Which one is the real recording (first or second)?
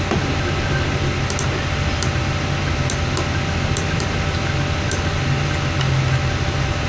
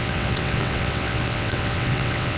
first